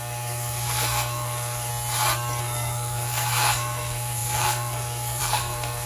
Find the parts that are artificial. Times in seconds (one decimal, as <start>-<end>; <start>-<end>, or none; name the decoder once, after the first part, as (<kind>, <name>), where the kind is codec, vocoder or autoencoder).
0.0-1.7 (codec, SNAC); 2.4-5.9